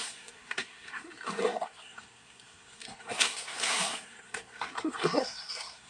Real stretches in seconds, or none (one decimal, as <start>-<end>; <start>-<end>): none